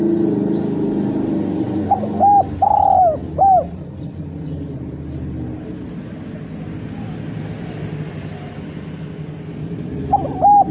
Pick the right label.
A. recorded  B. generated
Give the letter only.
A